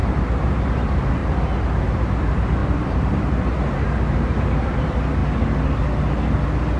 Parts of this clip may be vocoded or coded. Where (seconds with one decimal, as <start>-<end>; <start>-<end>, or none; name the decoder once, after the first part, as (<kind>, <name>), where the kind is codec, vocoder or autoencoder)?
0.0-1.2 (vocoder, BigVGAN v2); 1.8-5.2